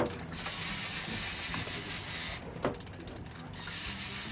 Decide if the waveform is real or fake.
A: real